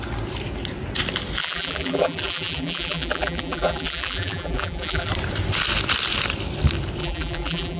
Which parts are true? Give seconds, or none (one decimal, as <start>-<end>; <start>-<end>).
0.0-1.4; 5.1-7.0